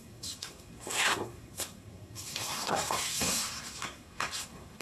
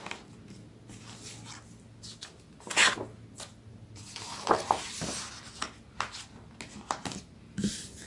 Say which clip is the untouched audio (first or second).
second